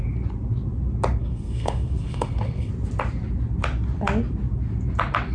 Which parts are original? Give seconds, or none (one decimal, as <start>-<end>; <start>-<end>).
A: 0.0-1.2; 2.7-5.3